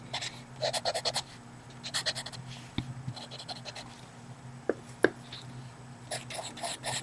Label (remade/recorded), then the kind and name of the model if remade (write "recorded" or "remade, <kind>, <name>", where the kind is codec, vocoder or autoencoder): recorded